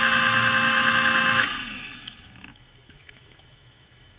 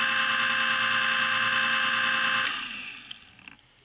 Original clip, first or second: second